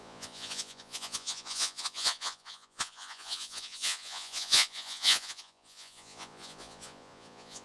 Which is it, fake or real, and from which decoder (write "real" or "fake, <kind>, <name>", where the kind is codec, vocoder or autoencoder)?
fake, vocoder, Vocos